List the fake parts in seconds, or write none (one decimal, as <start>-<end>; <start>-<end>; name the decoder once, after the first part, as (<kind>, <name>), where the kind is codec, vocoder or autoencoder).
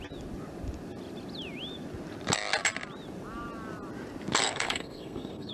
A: 4.4-5.5 (codec, SNAC)